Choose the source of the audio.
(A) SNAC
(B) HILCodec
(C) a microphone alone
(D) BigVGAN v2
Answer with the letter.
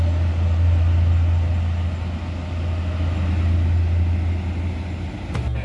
C